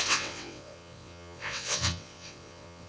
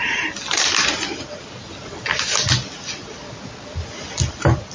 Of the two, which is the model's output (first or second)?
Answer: first